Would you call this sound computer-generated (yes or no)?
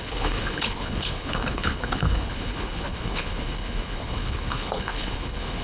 yes